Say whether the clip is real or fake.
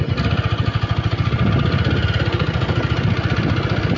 real